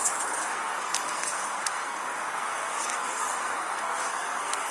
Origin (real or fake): fake